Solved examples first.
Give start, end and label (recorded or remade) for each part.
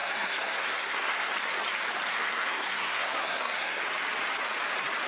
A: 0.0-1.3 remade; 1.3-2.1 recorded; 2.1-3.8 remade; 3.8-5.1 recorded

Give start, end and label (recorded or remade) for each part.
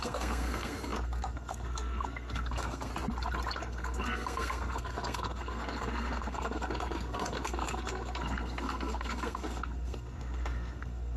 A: 0.0-2.9 remade; 2.9-3.6 recorded; 3.6-11.2 remade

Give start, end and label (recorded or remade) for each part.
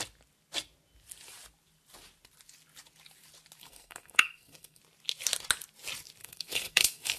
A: 0.0-3.6 recorded; 3.6-4.8 remade; 4.8-6.2 recorded; 6.2-7.2 remade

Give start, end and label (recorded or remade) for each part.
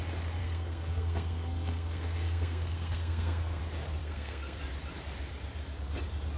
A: 0.0-0.4 recorded; 0.4-3.6 remade; 3.6-4.0 recorded; 4.0-4.6 remade; 4.6-6.4 recorded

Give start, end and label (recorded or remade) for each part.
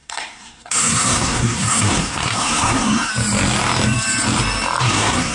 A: 0.0-3.1 remade; 3.1-4.8 recorded; 4.8-5.3 remade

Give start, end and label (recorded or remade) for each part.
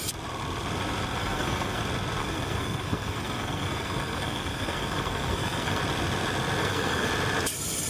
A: 0.0-1.2 recorded; 1.2-1.8 remade; 1.8-2.2 recorded; 2.2-5.8 remade; 5.8-6.6 recorded; 6.6-7.1 remade; 7.1-7.9 recorded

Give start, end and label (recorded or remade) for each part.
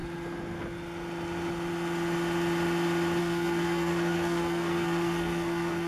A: 0.0-3.2 recorded; 3.2-5.9 remade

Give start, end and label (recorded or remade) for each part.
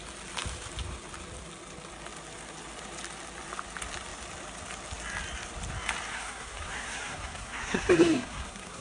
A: 0.0-6.1 recorded; 6.1-8.8 remade